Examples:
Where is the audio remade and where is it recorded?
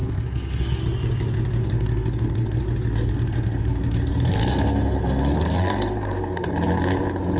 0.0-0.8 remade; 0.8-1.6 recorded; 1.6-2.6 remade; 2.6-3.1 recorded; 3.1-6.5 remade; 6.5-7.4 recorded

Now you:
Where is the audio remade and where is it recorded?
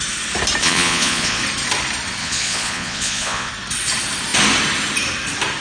0.0-0.6 recorded; 0.6-1.4 remade; 1.4-2.2 recorded; 2.2-3.5 remade; 3.5-5.6 recorded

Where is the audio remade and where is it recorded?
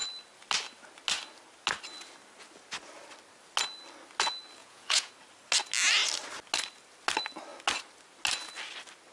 0.0-4.6 recorded; 4.6-5.1 remade; 5.1-9.1 recorded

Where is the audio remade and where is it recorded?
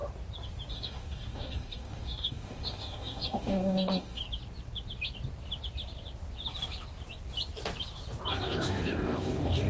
0.0-0.7 recorded; 0.7-4.2 remade; 4.2-8.3 recorded; 8.3-9.7 remade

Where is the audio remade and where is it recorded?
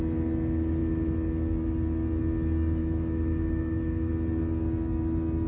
0.0-2.8 recorded; 2.8-4.1 remade; 4.1-5.5 recorded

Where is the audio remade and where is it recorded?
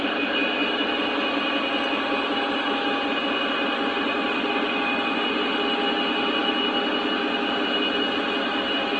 0.0-9.0 recorded